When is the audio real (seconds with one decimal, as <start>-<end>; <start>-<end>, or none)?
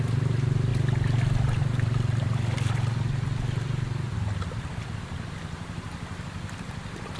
0.0-7.2